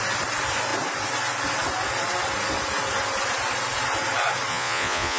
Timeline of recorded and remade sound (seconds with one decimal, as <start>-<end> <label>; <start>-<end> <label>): 0.0-4.5 recorded; 4.5-5.2 remade